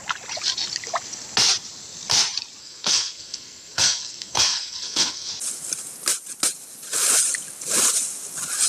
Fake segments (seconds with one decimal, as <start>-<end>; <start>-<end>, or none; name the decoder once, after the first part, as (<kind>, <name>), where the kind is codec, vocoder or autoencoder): 2.6-5.3 (codec, SNAC)